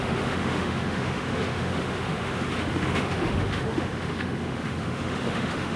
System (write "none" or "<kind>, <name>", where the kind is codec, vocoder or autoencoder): autoencoder, DAC-VAE